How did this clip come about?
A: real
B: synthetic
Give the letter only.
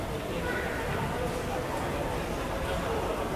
A